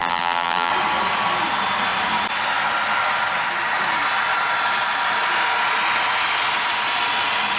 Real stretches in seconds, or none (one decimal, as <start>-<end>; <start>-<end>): 0.7-7.6